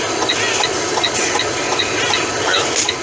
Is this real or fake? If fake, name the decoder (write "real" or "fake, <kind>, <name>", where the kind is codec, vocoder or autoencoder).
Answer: real